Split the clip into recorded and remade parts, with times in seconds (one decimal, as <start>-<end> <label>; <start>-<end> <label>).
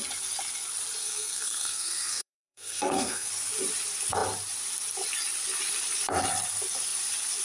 0.0-1.0 recorded; 1.0-3.3 remade; 3.3-7.4 recorded